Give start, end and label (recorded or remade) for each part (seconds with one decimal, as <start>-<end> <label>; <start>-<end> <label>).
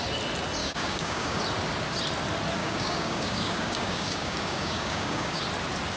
0.0-0.6 recorded; 0.6-1.4 remade; 1.4-2.6 recorded; 2.6-5.4 remade; 5.4-6.0 recorded